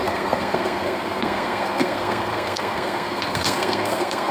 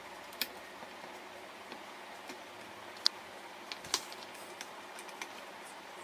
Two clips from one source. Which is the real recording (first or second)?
second